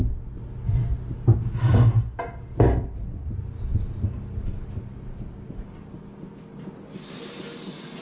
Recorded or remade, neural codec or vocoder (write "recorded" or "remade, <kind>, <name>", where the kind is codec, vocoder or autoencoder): recorded